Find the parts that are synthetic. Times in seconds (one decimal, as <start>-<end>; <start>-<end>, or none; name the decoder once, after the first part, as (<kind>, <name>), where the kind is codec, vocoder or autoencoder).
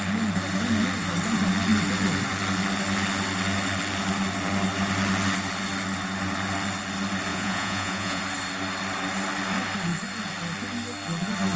7.3-8.2 (vocoder, Vocos)